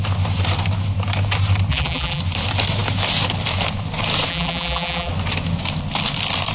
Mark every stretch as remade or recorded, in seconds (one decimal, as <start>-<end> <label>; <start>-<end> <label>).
0.0-1.7 recorded; 1.7-2.2 remade; 2.2-4.3 recorded; 4.3-5.1 remade; 5.1-6.5 recorded